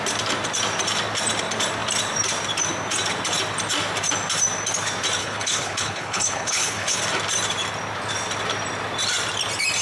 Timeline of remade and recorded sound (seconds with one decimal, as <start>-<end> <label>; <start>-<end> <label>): 0.0-5.2 recorded; 5.2-7.0 remade; 7.0-9.8 recorded